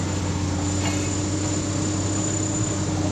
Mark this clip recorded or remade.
recorded